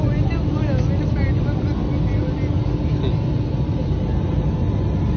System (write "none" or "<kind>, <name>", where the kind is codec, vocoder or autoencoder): none